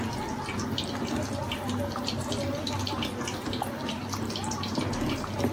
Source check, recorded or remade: recorded